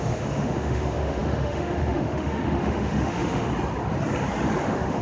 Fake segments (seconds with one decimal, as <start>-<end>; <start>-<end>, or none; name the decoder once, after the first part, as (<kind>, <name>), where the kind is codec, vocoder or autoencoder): 0.0-3.5 (autoencoder, DAC-VAE); 4.6-5.0